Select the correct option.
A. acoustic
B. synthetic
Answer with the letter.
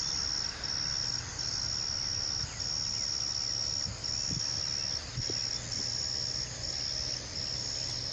A